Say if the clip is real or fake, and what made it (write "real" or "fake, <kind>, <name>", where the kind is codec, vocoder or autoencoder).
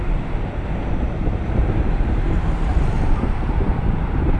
fake, vocoder, BigVGAN v2